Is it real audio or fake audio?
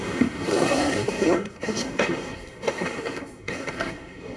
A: fake